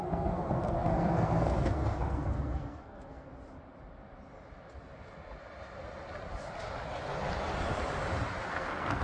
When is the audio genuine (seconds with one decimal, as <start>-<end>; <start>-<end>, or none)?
3.3-8.5